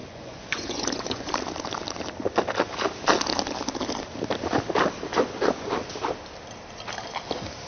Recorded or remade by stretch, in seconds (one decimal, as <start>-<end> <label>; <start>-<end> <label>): 0.0-1.3 remade; 1.3-5.1 recorded; 5.1-5.7 remade; 5.7-7.7 recorded